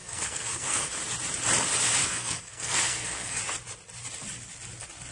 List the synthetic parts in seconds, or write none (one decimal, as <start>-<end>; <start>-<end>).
0.0-0.9; 2.0-3.4